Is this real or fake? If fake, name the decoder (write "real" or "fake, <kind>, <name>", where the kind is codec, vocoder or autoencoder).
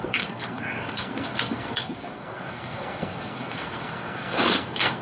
fake, codec, SNAC